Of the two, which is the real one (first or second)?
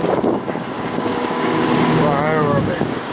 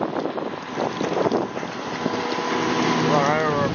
second